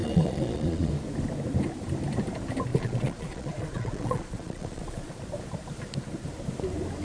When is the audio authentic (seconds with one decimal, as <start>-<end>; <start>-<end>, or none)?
0.9-2.7; 5.1-7.0